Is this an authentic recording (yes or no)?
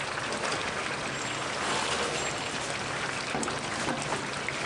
yes